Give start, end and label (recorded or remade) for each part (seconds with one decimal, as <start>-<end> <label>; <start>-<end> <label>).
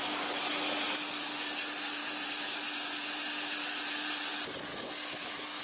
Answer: 0.0-4.7 recorded; 4.7-5.6 remade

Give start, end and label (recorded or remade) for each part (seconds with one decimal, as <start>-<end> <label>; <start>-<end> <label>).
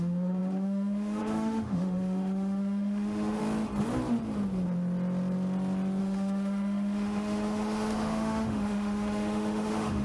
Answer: 0.0-3.4 remade; 3.4-6.0 recorded; 6.0-10.0 remade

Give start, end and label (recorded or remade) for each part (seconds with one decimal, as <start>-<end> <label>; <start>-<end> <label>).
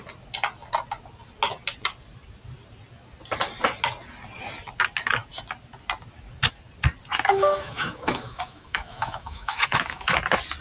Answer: 0.0-7.3 recorded; 7.3-10.2 remade; 10.2-10.6 recorded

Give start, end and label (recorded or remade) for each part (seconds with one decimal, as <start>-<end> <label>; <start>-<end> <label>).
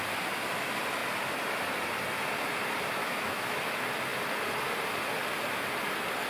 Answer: 0.0-3.0 recorded; 3.0-3.6 remade; 3.6-6.3 recorded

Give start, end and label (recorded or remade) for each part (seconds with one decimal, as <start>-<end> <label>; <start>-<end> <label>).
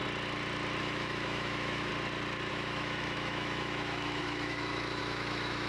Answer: 0.0-0.8 recorded; 0.8-1.9 remade; 1.9-2.5 recorded; 2.5-5.7 remade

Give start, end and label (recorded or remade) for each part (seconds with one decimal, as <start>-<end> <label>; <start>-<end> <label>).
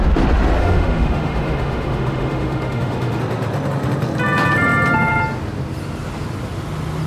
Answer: 0.0-0.6 recorded; 0.6-3.2 remade; 3.2-7.1 recorded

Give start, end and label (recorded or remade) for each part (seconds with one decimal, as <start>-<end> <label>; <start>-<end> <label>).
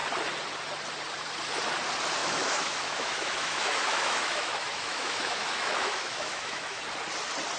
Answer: 0.0-2.2 recorded; 2.2-6.8 remade; 6.8-7.6 recorded